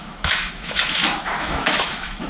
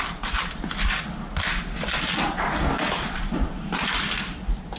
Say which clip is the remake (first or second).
first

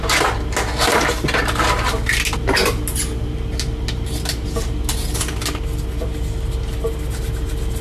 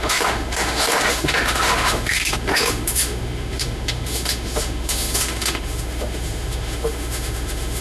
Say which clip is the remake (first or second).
second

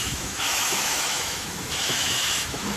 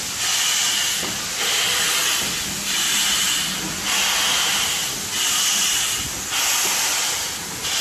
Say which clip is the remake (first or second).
first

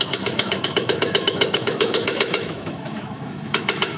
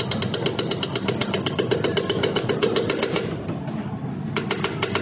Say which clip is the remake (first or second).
first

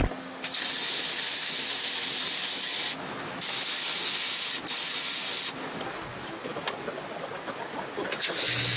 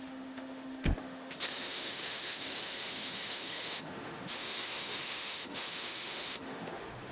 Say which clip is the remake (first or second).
second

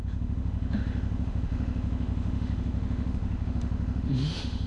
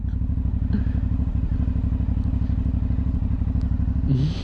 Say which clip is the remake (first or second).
first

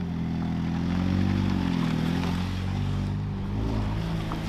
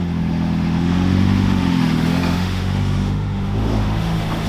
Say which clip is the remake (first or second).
second